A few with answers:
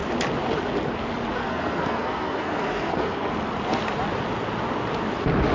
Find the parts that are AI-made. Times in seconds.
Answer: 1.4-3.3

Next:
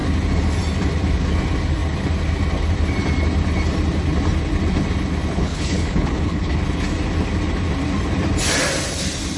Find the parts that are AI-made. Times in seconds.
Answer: 5.3-6.6

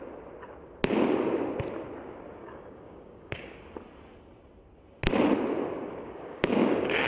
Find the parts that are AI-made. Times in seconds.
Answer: 2.4-3.6; 5.9-7.1